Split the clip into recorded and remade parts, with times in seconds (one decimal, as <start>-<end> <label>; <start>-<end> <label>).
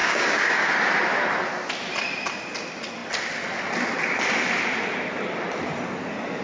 0.0-0.7 remade; 0.7-6.4 recorded